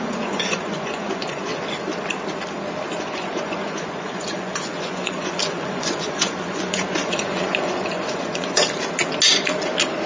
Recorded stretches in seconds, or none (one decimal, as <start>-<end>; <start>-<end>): 1.5-3.0; 8.6-10.1